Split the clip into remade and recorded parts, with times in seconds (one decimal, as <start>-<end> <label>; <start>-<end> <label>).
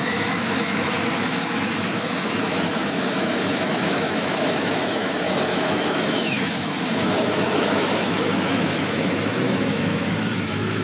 0.0-10.8 remade